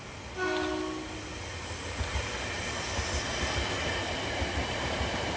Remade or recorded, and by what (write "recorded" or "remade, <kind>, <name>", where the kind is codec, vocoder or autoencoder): recorded